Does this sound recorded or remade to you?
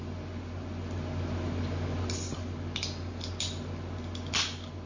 recorded